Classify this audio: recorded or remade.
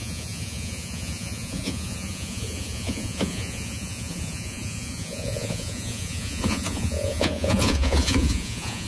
remade